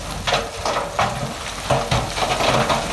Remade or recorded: recorded